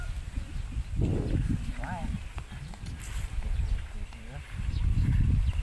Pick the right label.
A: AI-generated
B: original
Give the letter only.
B